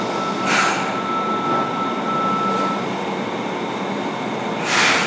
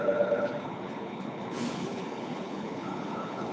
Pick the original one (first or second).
first